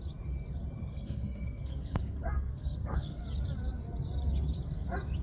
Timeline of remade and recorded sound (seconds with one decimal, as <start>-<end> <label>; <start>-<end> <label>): 0.0-0.8 recorded; 0.8-3.2 remade; 3.2-5.2 recorded